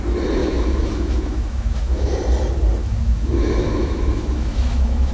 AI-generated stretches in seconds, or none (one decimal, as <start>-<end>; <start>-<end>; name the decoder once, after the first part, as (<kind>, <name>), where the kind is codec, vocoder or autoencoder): 0.4-2.1 (autoencoder, DAC-VAE); 2.8-5.1